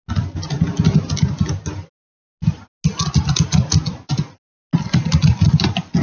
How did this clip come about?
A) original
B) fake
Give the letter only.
A